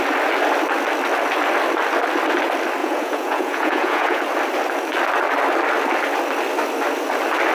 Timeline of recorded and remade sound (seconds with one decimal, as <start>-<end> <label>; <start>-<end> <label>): 0.0-2.8 recorded; 2.8-4.2 remade; 4.2-7.5 recorded